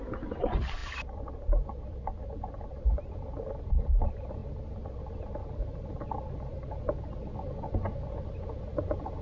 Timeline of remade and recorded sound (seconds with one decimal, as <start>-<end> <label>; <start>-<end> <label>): 0.0-9.2 recorded